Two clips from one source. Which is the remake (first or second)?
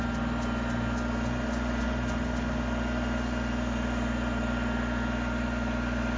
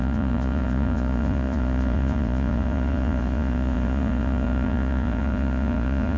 second